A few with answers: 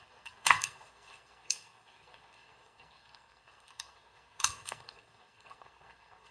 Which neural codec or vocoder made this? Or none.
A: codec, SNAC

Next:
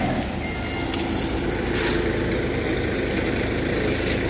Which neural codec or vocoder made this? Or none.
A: none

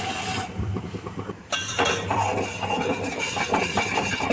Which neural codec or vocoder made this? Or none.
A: vocoder, BigVGAN v2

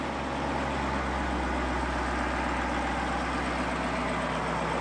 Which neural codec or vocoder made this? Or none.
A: none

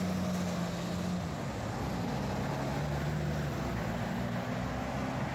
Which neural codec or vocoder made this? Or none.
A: none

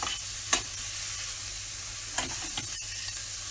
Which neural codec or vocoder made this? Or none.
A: none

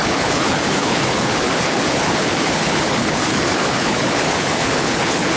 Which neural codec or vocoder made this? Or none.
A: codec, HILCodec